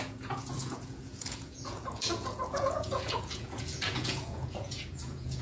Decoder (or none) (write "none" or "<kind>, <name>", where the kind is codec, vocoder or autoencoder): vocoder, Vocos